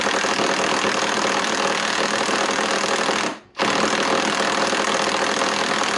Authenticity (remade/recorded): recorded